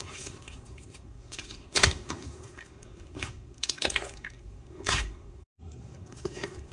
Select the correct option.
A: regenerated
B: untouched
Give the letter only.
A